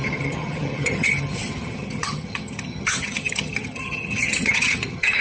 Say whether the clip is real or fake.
fake